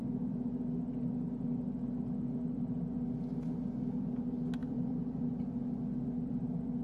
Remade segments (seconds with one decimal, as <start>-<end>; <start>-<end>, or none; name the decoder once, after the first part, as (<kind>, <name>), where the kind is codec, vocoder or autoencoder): 4.6-5.2 (vocoder, BigVGAN v2)